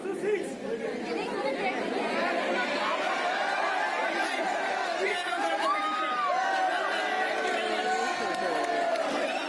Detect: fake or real real